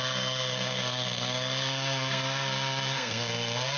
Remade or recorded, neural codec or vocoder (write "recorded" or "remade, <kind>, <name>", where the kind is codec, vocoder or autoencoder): remade, codec, SNAC